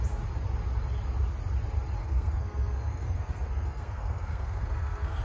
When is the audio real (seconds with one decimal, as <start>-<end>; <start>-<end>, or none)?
0.0-2.0